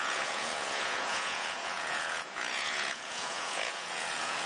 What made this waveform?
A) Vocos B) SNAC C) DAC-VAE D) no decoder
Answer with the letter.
A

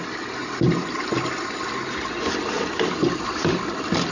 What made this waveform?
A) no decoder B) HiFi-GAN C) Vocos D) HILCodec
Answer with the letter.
A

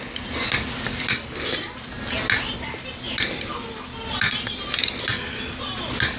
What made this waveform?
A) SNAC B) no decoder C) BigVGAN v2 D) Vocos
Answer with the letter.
B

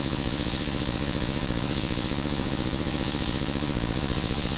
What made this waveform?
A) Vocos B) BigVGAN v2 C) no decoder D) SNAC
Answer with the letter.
A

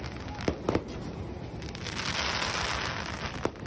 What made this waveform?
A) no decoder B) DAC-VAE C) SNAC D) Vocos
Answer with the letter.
A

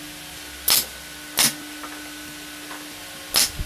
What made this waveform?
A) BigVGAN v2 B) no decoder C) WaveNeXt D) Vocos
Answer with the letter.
B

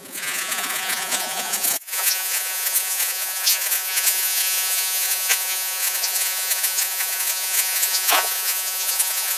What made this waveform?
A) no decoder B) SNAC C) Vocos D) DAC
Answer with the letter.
C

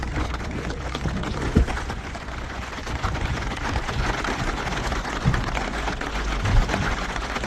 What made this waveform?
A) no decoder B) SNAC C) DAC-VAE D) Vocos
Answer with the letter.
D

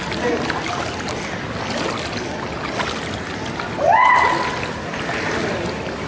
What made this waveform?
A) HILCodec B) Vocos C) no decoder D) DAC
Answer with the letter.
C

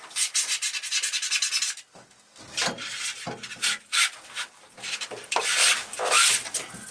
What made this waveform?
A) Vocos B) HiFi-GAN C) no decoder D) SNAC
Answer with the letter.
C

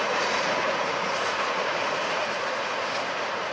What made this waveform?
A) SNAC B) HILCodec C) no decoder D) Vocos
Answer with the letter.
D